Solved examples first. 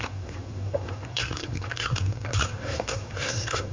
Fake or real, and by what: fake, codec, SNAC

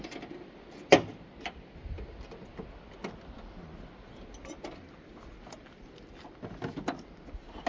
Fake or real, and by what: real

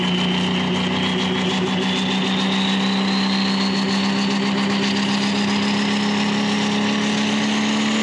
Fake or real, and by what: real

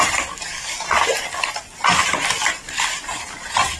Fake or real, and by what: real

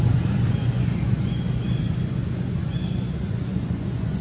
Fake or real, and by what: fake, vocoder, Vocos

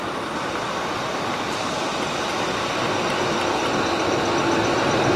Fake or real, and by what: real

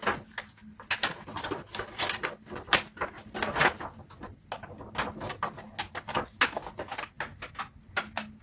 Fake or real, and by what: real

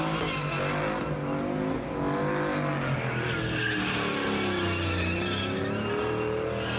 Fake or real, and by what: real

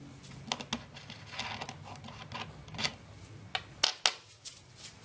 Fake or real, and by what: real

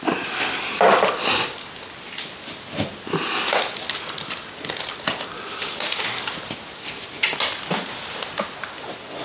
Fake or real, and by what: real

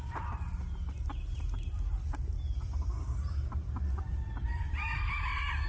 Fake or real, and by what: real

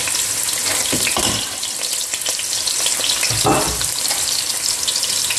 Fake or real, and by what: real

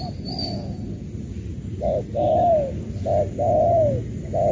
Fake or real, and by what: real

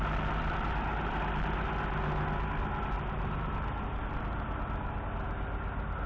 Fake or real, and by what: real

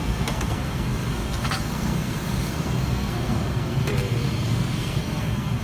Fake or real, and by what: fake, codec, SNAC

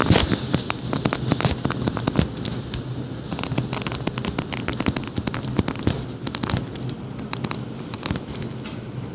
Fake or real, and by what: real